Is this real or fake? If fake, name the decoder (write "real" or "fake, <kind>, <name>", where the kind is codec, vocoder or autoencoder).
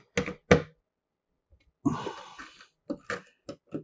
real